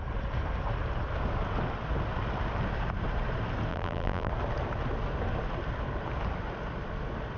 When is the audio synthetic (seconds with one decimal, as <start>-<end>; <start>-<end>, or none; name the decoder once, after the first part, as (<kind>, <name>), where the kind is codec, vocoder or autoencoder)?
3.7-4.3 (vocoder, BigVGAN v2)